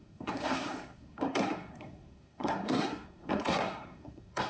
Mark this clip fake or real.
fake